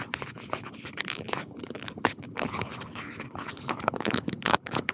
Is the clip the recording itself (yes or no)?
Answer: no